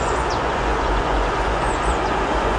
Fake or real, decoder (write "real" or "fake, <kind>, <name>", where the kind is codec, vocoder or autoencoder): fake, vocoder, Vocos